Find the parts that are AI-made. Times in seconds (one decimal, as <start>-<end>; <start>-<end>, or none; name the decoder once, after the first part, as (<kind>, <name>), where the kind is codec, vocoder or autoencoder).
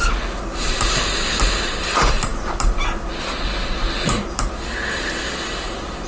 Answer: none